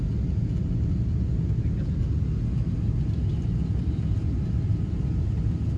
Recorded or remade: recorded